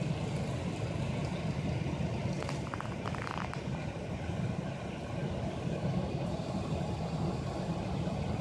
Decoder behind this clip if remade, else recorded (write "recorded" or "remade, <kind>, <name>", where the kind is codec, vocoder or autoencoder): recorded